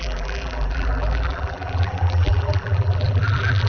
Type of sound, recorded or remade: remade